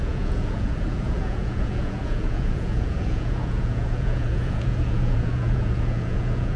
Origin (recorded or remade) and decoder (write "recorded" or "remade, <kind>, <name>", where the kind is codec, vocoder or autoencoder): remade, vocoder, Vocos